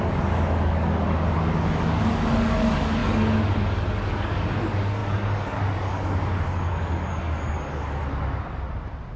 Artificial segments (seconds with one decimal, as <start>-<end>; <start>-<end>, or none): 0.0-8.0